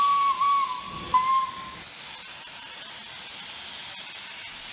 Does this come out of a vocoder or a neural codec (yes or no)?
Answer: no